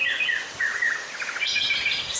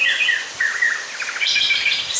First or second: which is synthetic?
second